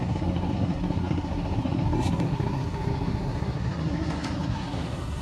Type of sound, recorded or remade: remade